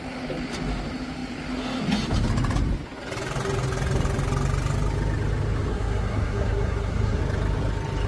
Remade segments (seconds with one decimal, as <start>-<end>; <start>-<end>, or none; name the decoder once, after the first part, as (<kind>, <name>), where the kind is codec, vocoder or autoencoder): 5.7-7.2 (codec, SNAC)